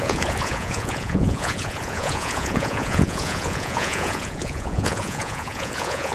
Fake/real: fake